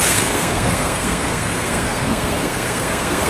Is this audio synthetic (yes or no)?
yes